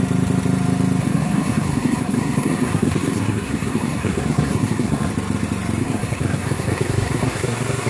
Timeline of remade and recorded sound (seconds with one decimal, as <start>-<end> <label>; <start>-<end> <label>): 0.0-1.0 recorded; 1.0-5.1 remade; 5.1-5.8 recorded; 5.8-7.9 remade